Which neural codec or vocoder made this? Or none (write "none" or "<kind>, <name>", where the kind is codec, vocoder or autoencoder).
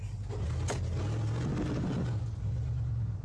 none